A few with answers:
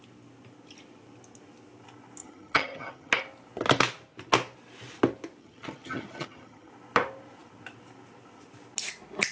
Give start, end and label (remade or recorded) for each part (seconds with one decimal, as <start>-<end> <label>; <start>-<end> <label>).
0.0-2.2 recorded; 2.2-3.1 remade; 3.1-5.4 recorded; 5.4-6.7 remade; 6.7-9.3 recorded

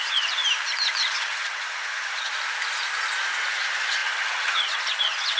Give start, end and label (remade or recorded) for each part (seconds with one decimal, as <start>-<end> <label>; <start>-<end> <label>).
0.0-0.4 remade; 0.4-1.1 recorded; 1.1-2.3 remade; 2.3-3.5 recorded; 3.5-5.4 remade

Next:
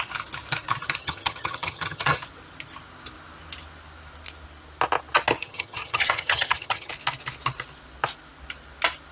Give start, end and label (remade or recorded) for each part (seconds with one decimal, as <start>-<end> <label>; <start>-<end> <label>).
0.0-1.0 recorded; 1.0-2.2 remade; 2.2-5.4 recorded; 5.4-6.9 remade; 6.9-9.1 recorded

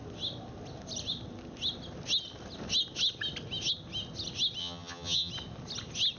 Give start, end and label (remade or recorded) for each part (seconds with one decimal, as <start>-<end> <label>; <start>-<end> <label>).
0.0-4.6 recorded; 4.6-5.3 remade; 5.3-6.2 recorded

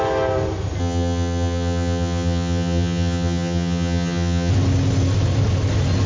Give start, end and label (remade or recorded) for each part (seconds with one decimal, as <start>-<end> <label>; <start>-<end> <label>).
0.0-0.8 recorded; 0.8-4.5 remade; 4.5-6.1 recorded